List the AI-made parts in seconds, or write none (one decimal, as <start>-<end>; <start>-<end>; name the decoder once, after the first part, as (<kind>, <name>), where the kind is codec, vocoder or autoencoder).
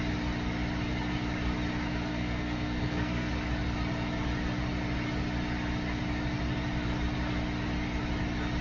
2.1-3.3 (codec, SNAC)